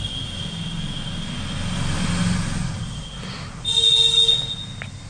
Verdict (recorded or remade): recorded